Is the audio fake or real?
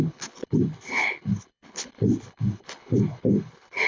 fake